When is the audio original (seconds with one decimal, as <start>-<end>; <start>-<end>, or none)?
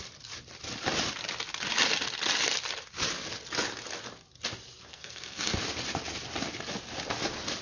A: 0.0-4.9; 5.6-7.6